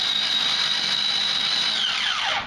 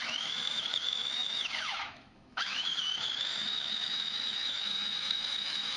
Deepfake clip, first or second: second